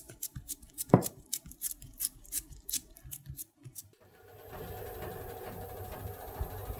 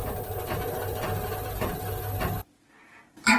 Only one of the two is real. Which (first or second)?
second